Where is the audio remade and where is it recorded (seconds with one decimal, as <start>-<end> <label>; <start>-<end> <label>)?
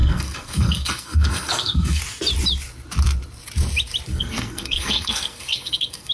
0.0-2.0 remade; 2.0-4.1 recorded; 4.1-6.1 remade